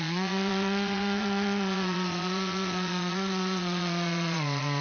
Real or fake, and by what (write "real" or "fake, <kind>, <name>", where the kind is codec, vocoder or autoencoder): fake, vocoder, Vocos